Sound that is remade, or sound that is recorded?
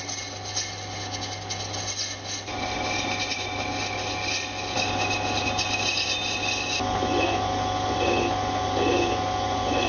recorded